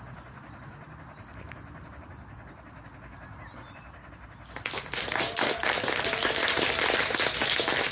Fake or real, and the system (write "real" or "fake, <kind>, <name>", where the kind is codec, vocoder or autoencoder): real